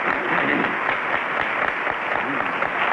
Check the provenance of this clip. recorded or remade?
recorded